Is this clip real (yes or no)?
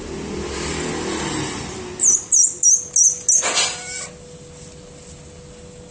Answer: yes